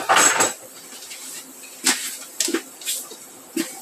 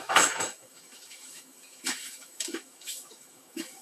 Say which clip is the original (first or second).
first